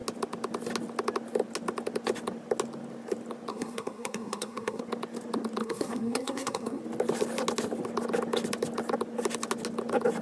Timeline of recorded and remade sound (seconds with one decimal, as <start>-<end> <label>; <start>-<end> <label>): 0.0-3.5 recorded; 3.5-4.8 remade; 4.8-5.6 recorded; 5.6-6.8 remade; 6.8-10.2 recorded